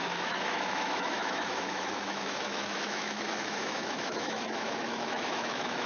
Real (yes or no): no